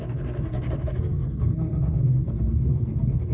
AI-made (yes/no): yes